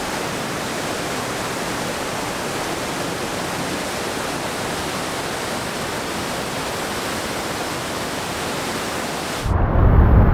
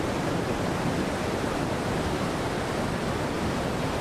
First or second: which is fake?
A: second